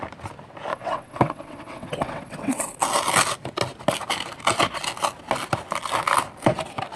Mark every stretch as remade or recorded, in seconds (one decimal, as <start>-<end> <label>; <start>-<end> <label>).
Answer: 0.0-0.7 recorded; 0.7-2.8 remade; 2.8-7.0 recorded